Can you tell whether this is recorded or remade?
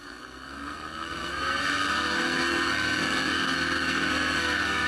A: remade